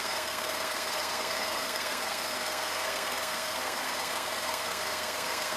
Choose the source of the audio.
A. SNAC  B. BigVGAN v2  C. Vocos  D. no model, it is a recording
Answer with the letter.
A